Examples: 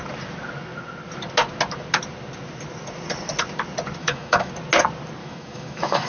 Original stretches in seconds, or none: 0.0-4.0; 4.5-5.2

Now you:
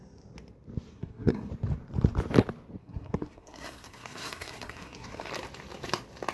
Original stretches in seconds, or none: 0.0-0.9; 1.5-2.8; 5.3-6.3

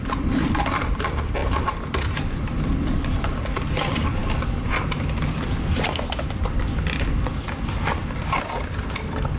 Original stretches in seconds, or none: 0.0-9.4

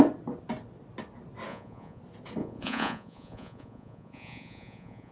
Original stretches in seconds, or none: 0.0-1.5; 2.0-2.4